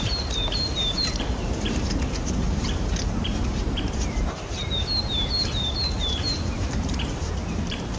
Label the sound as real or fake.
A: fake